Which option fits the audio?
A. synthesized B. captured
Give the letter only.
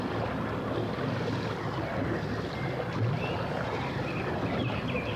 B